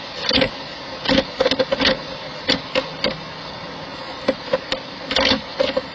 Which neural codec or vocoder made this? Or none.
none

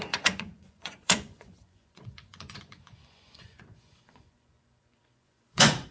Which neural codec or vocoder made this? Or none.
vocoder, Vocos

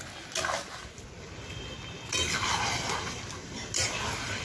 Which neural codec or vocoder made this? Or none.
none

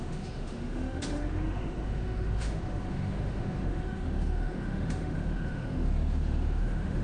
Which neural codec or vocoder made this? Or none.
autoencoder, DAC-VAE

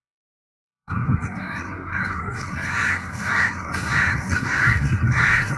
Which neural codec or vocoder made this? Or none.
codec, SNAC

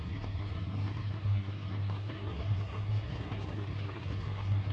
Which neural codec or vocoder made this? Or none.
codec, SNAC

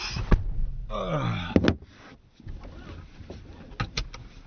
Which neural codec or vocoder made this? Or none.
none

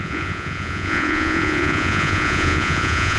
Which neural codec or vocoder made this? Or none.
vocoder, Vocos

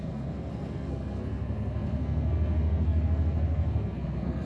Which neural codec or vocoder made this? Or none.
codec, SNAC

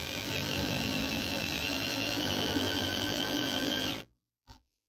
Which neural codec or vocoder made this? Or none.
vocoder, BigVGAN v2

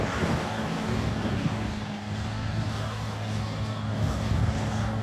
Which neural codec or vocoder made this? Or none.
codec, DAC